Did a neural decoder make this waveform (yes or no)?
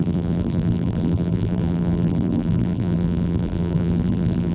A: yes